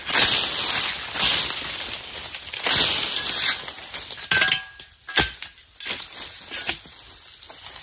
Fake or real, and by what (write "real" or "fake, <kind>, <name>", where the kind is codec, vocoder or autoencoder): real